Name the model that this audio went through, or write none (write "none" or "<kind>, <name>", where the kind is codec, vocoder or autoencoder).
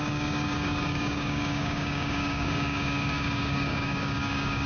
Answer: codec, DAC